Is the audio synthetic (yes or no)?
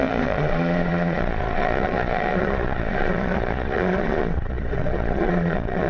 yes